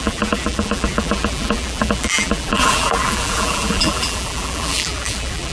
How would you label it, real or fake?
fake